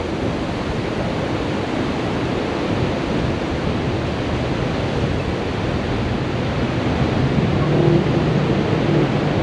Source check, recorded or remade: recorded